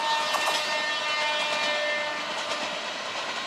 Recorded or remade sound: recorded